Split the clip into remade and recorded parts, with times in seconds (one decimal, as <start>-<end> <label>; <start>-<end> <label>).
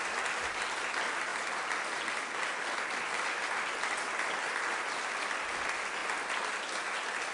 0.0-7.3 recorded